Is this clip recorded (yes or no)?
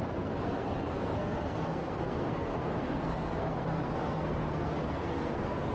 no